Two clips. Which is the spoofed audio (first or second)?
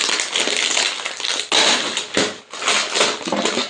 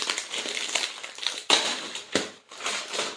second